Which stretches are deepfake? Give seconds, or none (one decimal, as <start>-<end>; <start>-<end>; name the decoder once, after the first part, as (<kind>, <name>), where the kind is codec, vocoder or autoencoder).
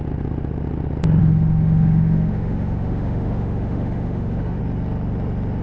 1.2-4.6 (autoencoder, DAC-VAE)